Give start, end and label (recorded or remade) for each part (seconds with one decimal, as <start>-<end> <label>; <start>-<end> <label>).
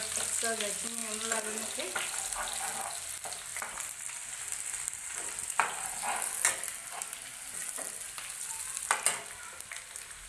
0.0-10.3 recorded